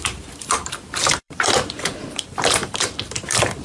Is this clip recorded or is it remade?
remade